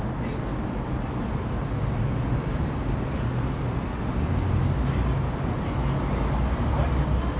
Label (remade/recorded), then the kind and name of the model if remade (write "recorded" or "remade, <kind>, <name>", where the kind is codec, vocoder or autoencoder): recorded